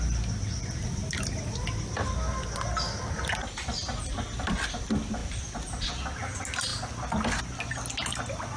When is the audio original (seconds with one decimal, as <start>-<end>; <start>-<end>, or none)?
0.0-8.6